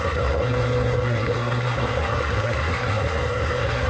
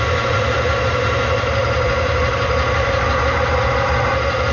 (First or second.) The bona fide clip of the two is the second